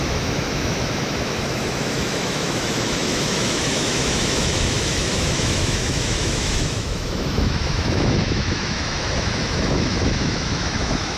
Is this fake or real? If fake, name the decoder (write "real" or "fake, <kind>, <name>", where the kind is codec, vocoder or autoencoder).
fake, autoencoder, DAC-VAE